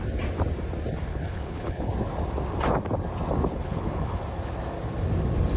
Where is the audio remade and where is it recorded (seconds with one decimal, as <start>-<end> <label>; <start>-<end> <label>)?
0.0-1.1 recorded; 1.1-1.9 remade; 1.9-3.5 recorded; 3.5-4.2 remade; 4.2-5.6 recorded